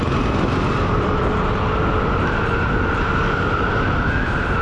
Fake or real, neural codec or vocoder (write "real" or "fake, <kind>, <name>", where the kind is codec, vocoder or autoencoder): real